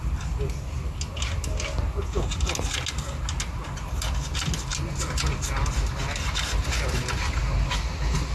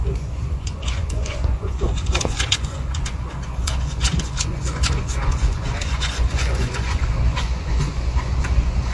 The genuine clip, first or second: first